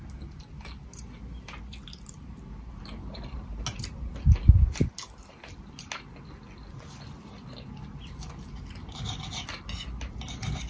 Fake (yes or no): no